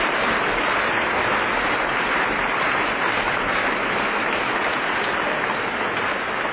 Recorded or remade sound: recorded